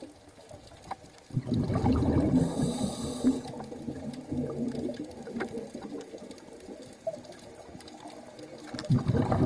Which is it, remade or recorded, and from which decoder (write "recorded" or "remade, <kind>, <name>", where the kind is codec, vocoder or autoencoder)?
recorded